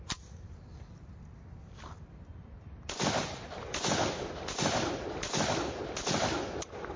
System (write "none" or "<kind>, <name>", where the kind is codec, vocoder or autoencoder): none